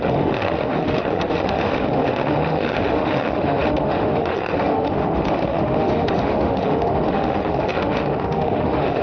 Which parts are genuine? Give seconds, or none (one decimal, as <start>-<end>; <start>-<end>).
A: none